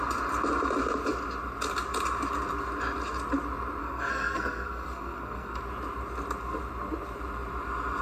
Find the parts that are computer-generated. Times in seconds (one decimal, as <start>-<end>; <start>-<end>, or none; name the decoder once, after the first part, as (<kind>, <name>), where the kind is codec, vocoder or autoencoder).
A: 3.8-5.6 (codec, SNAC)